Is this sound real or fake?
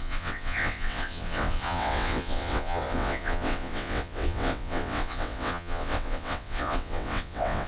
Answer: fake